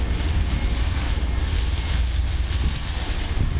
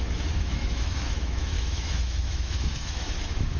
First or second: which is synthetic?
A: second